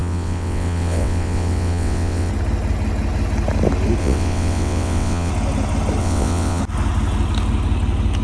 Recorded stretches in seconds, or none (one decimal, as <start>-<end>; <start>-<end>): 2.3-4.0; 5.3-6.0; 6.6-8.2